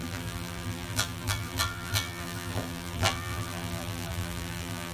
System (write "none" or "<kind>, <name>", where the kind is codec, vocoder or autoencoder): vocoder, BigVGAN v2